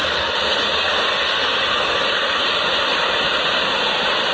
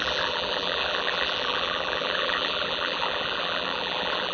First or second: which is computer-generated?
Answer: second